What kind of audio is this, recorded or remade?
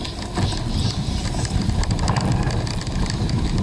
recorded